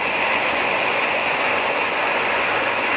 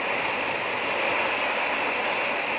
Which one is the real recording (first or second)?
second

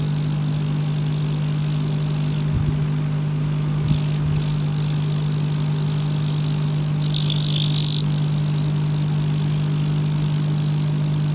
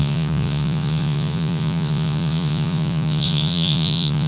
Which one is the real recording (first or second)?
first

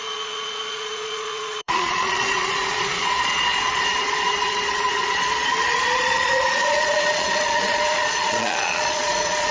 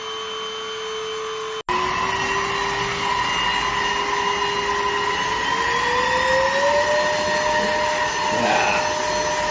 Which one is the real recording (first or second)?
second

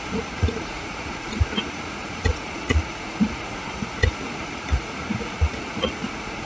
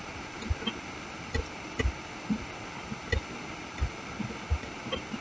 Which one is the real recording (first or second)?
second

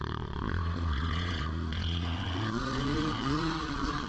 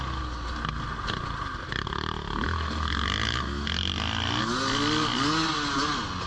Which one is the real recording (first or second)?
second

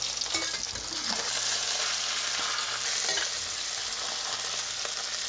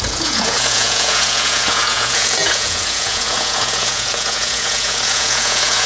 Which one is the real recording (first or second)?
first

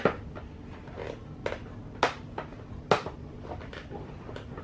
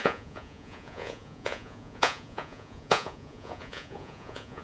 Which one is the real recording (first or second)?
first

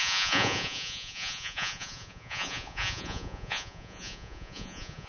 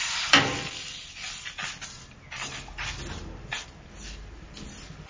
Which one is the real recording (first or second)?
second